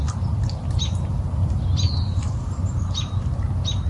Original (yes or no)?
yes